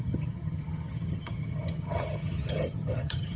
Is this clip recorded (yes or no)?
no